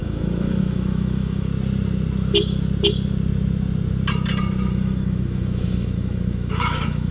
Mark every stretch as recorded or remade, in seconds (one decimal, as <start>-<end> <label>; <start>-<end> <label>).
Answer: 0.0-1.5 remade; 1.5-4.7 recorded; 4.7-7.1 remade